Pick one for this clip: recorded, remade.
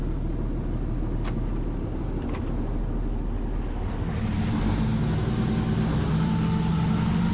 recorded